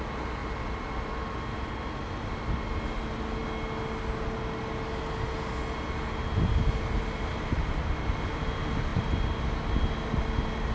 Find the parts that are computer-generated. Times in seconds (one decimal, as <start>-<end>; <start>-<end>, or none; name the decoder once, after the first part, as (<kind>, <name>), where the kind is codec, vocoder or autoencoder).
none